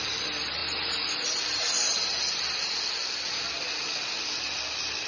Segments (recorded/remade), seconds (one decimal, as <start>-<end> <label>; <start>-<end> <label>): 0.0-5.1 recorded